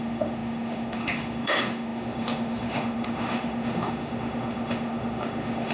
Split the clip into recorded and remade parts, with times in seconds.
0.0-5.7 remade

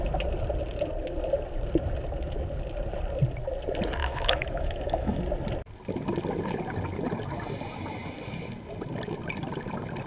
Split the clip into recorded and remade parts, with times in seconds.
0.0-4.0 recorded; 4.0-5.2 remade; 5.2-10.1 recorded

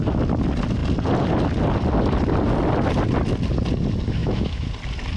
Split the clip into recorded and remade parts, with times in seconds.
0.0-4.2 recorded; 4.2-4.7 remade; 4.7-5.2 recorded